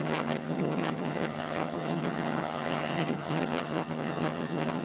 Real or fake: fake